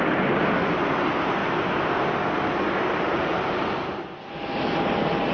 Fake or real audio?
real